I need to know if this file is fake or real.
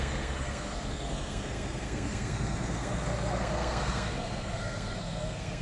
fake